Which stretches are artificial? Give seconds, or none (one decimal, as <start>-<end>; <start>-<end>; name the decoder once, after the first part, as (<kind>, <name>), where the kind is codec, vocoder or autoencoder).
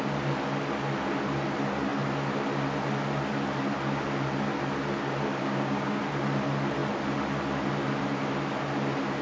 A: 5.4-6.0 (codec, DAC)